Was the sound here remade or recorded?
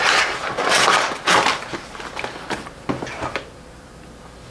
recorded